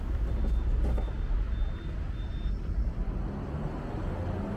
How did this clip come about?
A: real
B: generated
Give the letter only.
A